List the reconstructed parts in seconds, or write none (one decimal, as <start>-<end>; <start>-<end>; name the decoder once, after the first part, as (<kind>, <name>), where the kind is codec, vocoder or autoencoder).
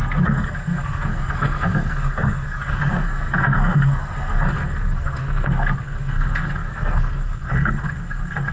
0.0-8.5 (codec, SNAC)